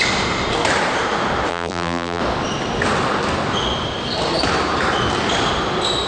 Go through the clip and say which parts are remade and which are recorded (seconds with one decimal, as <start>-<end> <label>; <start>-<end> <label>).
0.0-1.5 recorded; 1.5-2.2 remade; 2.2-6.1 recorded